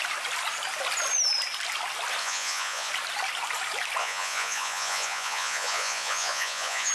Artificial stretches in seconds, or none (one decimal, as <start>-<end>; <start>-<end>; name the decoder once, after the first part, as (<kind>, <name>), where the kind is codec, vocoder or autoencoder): 2.2-2.9 (vocoder, Vocos); 4.0-6.9